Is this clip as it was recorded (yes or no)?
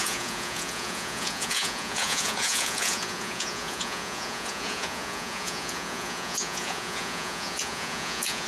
no